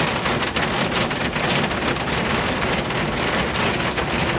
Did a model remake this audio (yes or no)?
no